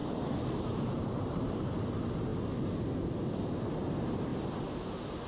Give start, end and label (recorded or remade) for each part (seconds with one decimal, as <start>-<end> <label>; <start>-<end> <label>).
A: 0.0-1.7 remade; 1.7-4.3 recorded; 4.3-5.3 remade

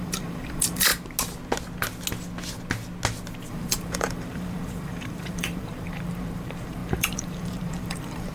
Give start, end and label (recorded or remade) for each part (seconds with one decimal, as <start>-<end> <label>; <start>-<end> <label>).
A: 0.0-0.9 remade; 0.9-3.5 recorded; 3.5-8.3 remade

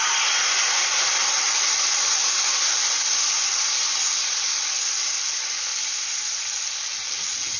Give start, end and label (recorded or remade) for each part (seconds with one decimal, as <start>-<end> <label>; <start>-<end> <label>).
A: 0.0-4.3 remade; 4.3-5.7 recorded; 5.7-6.4 remade; 6.4-7.6 recorded

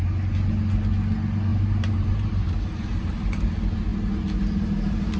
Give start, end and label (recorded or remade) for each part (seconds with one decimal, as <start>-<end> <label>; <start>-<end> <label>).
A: 0.0-1.5 recorded; 1.5-3.4 remade; 3.4-5.2 recorded

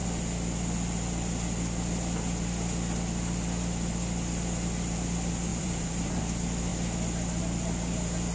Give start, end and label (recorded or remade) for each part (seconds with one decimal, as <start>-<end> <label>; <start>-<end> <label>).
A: 0.0-5.5 recorded; 5.5-6.2 remade; 6.2-8.3 recorded

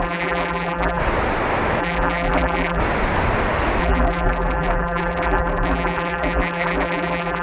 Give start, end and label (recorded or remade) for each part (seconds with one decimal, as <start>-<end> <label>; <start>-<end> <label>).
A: 0.0-1.0 remade; 1.0-1.8 recorded; 1.8-2.8 remade; 2.8-3.8 recorded; 3.8-7.4 remade